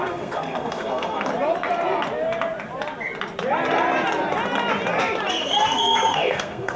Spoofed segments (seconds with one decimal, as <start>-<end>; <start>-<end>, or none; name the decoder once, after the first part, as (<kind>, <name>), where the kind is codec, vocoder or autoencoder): 0.0-1.3 (codec, SNAC); 5.3-6.8